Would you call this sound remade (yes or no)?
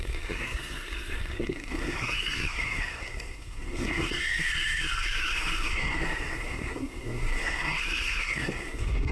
yes